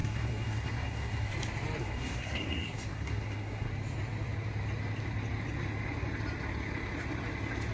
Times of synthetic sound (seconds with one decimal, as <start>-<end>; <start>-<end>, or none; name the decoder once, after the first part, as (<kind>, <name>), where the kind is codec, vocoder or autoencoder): 0.0-1.3 (codec, SNAC); 1.8-3.7